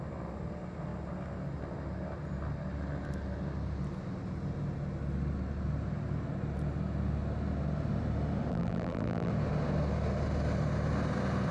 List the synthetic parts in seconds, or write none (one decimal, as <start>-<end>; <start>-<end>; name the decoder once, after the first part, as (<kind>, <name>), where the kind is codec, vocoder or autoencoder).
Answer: 8.5-9.3 (vocoder, BigVGAN v2)